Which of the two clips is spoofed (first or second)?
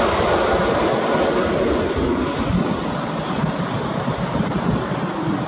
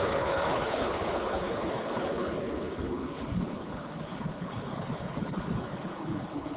second